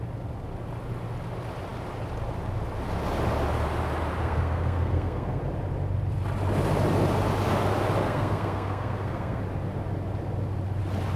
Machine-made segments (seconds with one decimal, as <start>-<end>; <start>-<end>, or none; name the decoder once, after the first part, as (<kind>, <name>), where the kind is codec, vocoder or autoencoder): 4.2-5.4 (codec, SNAC); 8.0-9.4